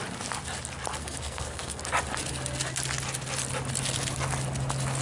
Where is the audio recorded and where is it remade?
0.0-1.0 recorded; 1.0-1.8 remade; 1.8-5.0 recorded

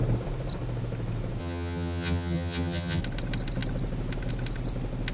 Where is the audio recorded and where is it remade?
0.0-1.4 recorded; 1.4-3.0 remade; 3.0-5.1 recorded

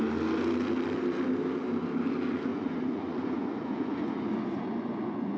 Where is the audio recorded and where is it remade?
0.0-2.5 recorded; 2.5-5.4 remade

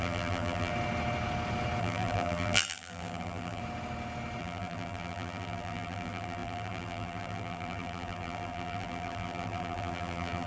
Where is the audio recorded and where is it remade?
0.0-0.7 remade; 0.7-1.8 recorded; 1.8-3.6 remade; 3.6-4.4 recorded; 4.4-10.5 remade

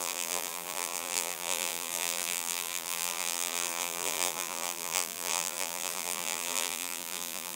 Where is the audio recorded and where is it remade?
0.0-7.6 remade

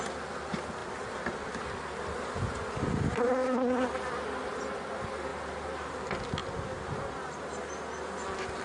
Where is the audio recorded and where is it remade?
0.0-5.3 recorded; 5.3-5.9 remade; 5.9-8.6 recorded

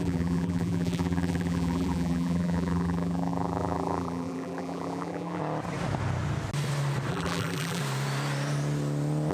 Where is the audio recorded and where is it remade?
0.0-5.4 remade; 5.4-7.1 recorded; 7.1-7.8 remade; 7.8-9.3 recorded

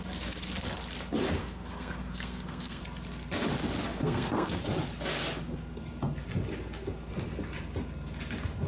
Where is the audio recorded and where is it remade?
0.0-1.4 recorded; 1.4-2.8 remade; 2.8-4.0 recorded; 4.0-4.6 remade; 4.6-8.7 recorded